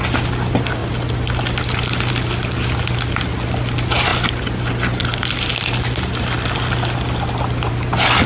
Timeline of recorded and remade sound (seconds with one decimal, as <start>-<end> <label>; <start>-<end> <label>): 0.0-8.3 recorded